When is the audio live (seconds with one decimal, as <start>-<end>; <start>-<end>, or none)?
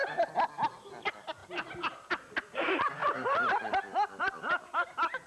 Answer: 0.0-5.3